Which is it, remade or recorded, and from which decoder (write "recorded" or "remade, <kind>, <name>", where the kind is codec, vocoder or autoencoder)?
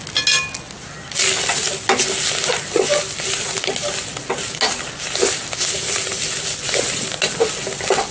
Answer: recorded